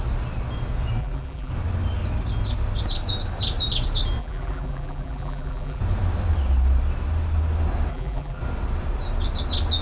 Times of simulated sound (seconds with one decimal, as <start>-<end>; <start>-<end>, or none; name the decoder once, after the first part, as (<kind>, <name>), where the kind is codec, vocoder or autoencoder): 1.0-1.5 (vocoder, BigVGAN v2); 4.2-5.8; 7.9-8.4